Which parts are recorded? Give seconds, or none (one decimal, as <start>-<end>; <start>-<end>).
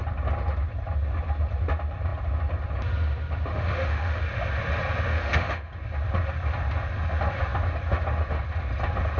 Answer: 0.0-3.5; 4.2-5.1; 5.7-9.2